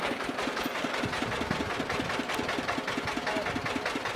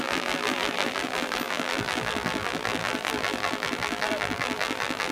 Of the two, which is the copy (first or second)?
second